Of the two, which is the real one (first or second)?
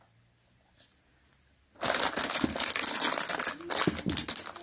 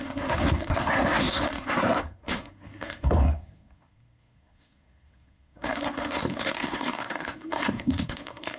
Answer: first